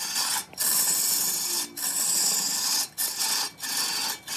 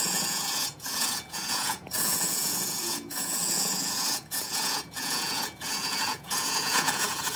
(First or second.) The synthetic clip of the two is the second